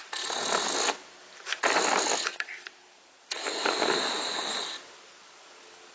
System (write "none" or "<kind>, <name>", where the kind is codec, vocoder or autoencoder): none